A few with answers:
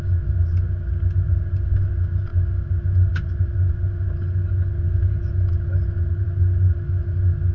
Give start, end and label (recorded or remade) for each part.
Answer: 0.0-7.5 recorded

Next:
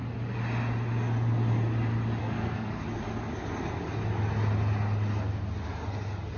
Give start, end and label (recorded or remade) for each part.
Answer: 0.0-2.2 recorded; 2.2-2.8 remade; 2.8-6.4 recorded

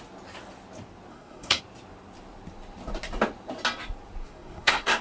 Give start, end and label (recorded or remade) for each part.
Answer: 0.0-1.1 recorded; 1.1-1.6 remade; 1.6-4.2 recorded; 4.2-5.0 remade

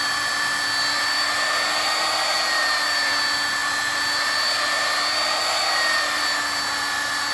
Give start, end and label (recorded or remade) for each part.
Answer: 0.0-7.3 recorded

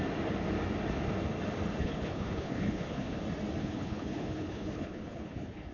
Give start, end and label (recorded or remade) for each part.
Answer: 0.0-1.8 recorded; 1.8-3.2 remade; 3.2-3.6 recorded; 3.6-5.7 remade

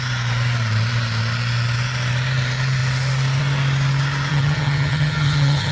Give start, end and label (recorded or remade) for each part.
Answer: 0.0-4.3 recorded; 4.3-5.7 remade